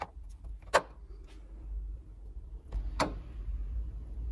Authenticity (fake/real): real